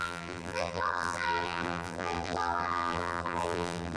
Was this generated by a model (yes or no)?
yes